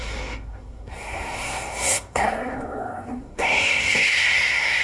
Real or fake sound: fake